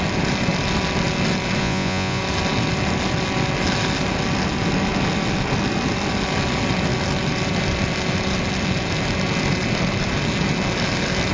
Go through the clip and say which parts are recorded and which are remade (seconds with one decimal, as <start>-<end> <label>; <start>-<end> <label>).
0.0-1.6 recorded; 1.6-2.2 remade; 2.2-11.3 recorded